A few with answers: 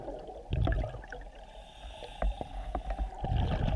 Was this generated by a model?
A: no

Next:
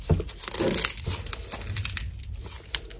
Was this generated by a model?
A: no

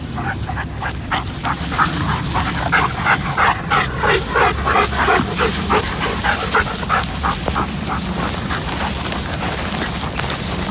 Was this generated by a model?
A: no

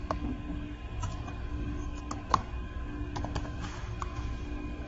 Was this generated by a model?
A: yes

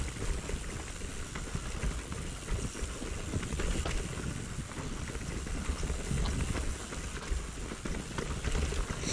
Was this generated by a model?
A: no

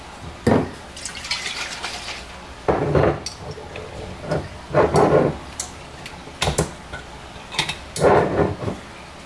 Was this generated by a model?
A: no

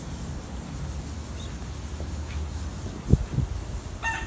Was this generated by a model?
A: no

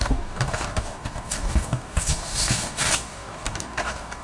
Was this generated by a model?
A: yes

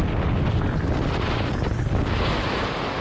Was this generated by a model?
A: no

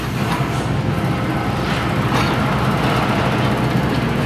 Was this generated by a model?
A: no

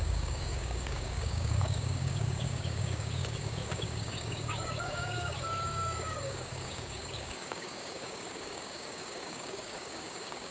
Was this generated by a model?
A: yes